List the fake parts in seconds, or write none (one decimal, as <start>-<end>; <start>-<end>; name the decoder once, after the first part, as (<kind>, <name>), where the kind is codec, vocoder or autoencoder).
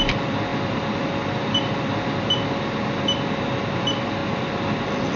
none